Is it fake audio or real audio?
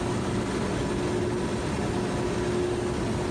real